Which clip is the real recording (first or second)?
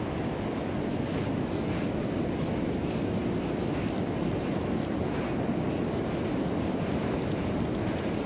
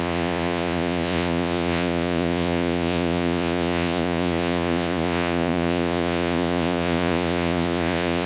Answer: first